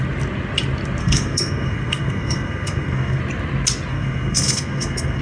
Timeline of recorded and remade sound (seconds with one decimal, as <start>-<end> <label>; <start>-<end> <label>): 0.0-1.0 recorded; 1.0-3.2 remade; 3.2-3.9 recorded; 3.9-5.2 remade